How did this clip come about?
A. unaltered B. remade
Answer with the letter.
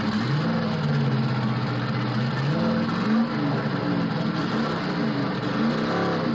A